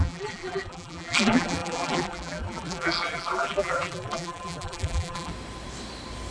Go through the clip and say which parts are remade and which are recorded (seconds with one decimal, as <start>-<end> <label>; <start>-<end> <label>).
0.0-5.3 remade; 5.3-6.3 recorded